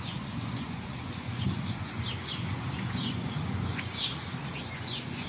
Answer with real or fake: fake